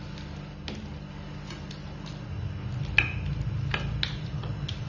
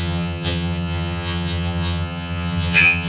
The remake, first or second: second